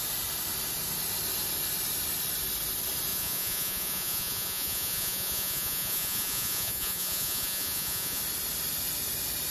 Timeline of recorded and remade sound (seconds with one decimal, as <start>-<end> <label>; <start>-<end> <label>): 0.0-3.1 recorded; 3.1-8.2 remade; 8.2-9.5 recorded